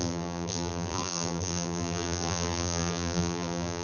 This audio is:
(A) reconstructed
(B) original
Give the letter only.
A